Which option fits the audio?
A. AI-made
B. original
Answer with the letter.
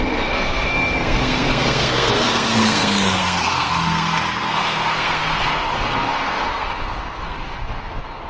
A